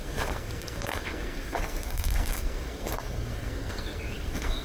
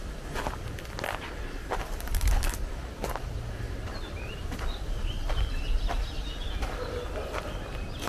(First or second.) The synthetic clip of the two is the first